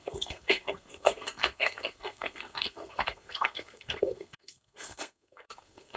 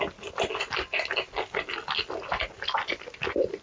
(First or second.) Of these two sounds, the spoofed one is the first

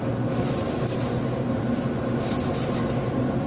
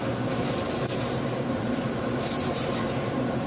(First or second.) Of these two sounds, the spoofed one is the second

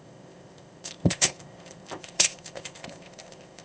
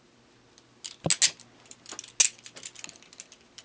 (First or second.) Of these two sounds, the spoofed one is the first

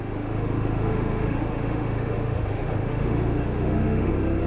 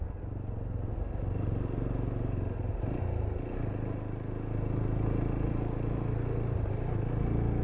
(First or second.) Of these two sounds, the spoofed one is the first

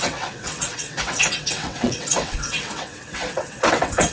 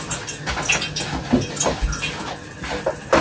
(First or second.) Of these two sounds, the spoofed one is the first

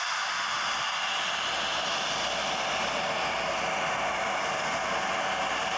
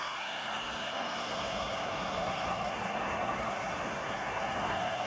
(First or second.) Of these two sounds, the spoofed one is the second